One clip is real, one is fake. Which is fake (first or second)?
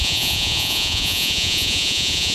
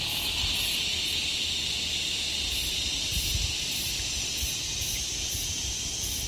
first